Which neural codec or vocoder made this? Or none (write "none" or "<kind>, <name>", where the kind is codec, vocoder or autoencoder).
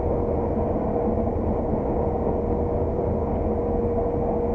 none